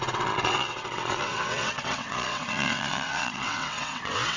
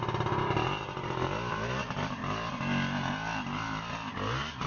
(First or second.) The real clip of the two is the second